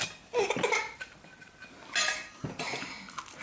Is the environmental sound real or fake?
real